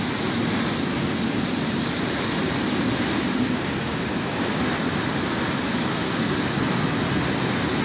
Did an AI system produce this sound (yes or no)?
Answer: no